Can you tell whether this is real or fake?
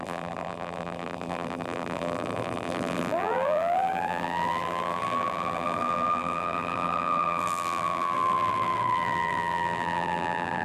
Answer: fake